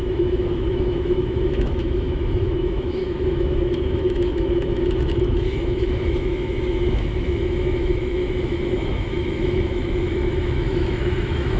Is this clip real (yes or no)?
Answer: no